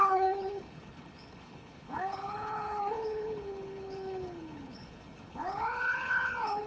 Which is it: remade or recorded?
remade